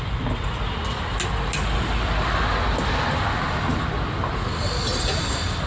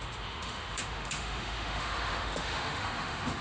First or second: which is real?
first